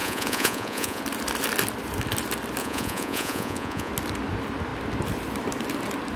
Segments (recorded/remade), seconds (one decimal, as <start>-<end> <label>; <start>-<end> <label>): 0.0-1.0 remade; 1.0-2.6 recorded; 2.6-3.9 remade; 3.9-6.2 recorded